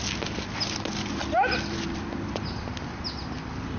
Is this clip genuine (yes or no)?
yes